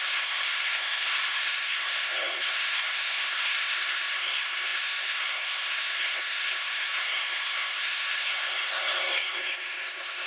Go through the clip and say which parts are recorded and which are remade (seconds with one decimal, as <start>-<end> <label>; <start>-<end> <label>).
0.0-10.3 remade